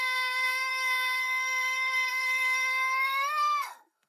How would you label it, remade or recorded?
remade